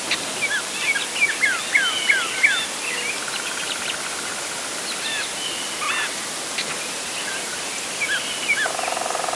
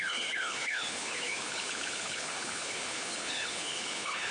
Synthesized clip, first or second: second